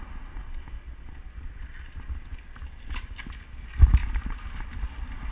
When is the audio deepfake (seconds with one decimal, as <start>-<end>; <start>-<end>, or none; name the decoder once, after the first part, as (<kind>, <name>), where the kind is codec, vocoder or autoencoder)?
none